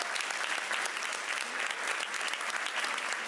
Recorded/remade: recorded